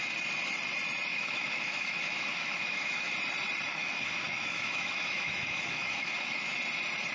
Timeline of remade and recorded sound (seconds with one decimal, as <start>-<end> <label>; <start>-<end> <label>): 0.0-1.1 recorded; 1.1-3.1 remade; 3.1-3.7 recorded; 3.7-6.6 remade; 6.6-7.1 recorded

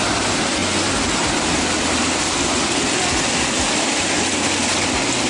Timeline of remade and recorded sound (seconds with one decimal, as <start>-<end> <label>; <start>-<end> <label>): 0.0-5.3 recorded

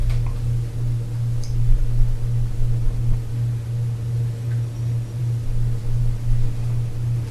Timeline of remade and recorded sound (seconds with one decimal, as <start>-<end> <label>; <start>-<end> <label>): 0.0-7.3 recorded

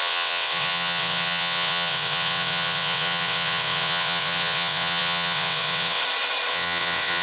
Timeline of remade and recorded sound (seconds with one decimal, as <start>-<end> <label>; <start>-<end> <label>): 0.0-6.0 remade; 6.0-6.5 recorded; 6.5-7.2 remade

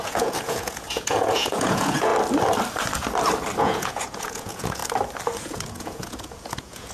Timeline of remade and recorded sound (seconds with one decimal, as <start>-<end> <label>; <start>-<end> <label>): 0.0-2.1 remade; 2.1-3.6 recorded; 3.6-4.8 remade; 4.8-5.4 recorded; 5.4-6.9 remade

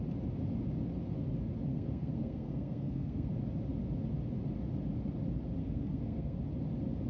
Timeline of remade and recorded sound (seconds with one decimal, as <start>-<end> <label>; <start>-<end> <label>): 0.0-1.7 recorded; 1.7-3.3 remade; 3.3-5.6 recorded; 5.6-6.4 remade; 6.4-7.1 recorded

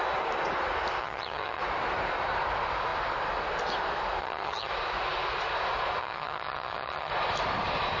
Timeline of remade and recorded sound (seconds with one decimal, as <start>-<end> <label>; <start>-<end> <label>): 0.0-1.0 recorded; 1.0-1.6 remade; 1.6-4.2 recorded; 4.2-4.7 remade; 4.7-6.0 recorded; 6.0-7.1 remade; 7.1-8.0 recorded